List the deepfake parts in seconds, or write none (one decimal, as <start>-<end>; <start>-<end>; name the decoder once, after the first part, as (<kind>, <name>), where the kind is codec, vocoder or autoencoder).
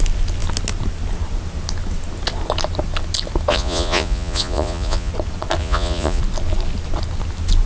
3.5-5.1 (vocoder, Vocos); 5.6-6.2